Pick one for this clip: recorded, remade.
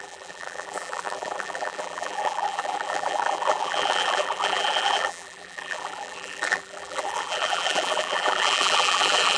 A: remade